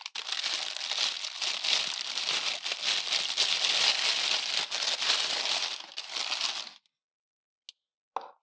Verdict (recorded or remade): recorded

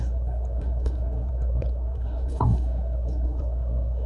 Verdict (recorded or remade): remade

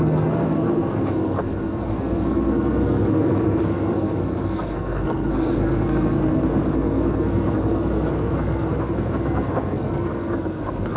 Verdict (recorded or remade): remade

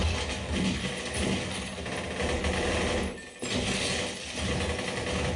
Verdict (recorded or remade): recorded